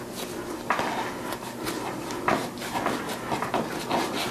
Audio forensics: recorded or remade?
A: recorded